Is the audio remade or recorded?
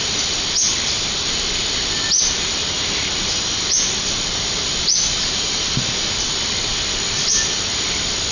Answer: recorded